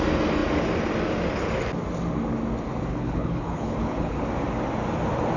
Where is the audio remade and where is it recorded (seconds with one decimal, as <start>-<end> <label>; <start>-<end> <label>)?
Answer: 0.0-2.9 recorded; 2.9-4.2 remade; 4.2-5.4 recorded